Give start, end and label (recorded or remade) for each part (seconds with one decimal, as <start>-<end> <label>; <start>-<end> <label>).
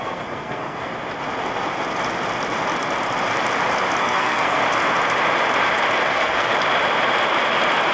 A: 0.0-0.9 remade; 0.9-4.0 recorded; 4.0-4.6 remade; 4.6-6.1 recorded; 6.1-6.5 remade; 6.5-7.9 recorded